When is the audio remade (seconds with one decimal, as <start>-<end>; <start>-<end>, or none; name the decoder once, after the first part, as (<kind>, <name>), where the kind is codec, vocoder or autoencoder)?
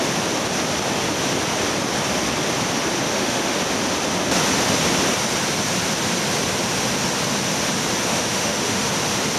3.1-3.6 (autoencoder, DAC-VAE); 8.1-8.9